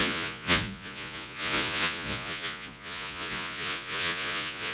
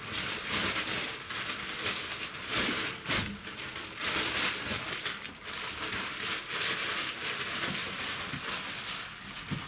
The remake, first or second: first